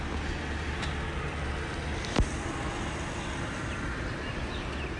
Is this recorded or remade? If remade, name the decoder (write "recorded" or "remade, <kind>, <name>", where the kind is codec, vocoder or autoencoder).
recorded